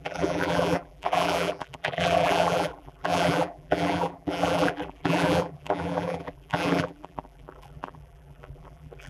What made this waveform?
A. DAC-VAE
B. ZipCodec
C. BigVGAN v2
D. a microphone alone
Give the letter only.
C